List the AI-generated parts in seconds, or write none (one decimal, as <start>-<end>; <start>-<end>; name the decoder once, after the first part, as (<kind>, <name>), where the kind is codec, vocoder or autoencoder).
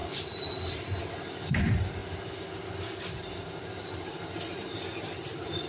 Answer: 0.0-1.1 (vocoder, BigVGAN v2)